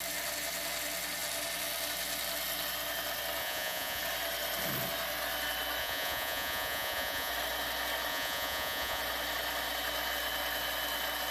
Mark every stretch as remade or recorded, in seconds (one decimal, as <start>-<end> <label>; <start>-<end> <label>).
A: 0.0-3.4 recorded; 3.4-4.0 remade; 4.0-5.8 recorded; 5.8-7.3 remade; 7.3-8.1 recorded; 8.1-9.0 remade; 9.0-11.3 recorded